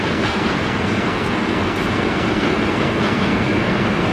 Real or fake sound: fake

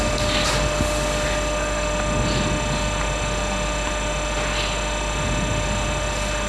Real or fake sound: real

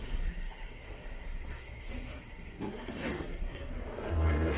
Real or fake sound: fake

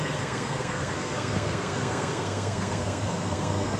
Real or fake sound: fake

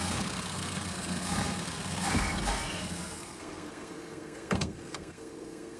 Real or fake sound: fake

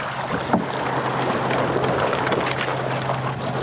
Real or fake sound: real